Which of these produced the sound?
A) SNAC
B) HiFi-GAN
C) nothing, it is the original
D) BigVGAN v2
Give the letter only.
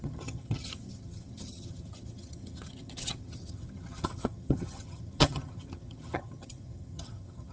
B